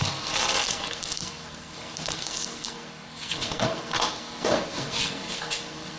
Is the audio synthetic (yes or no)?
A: yes